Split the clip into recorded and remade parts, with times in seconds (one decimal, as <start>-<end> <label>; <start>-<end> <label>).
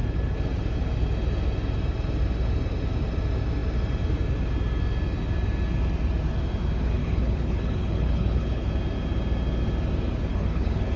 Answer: 0.0-7.0 recorded; 7.0-8.7 remade; 8.7-10.3 recorded; 10.3-11.0 remade